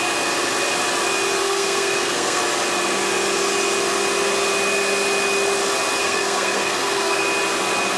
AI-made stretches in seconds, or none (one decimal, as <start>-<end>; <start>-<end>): 1.4-2.4; 6.0-7.2